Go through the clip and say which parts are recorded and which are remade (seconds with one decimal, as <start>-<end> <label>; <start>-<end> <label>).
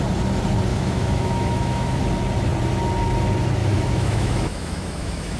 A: 0.0-0.7 recorded; 0.7-2.0 remade; 2.0-3.6 recorded; 3.6-5.4 remade